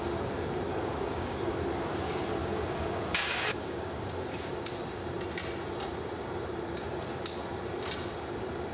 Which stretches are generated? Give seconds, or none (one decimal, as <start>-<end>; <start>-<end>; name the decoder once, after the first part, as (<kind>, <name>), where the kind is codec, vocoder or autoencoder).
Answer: 0.7-1.5 (codec, DAC); 2.4-4.5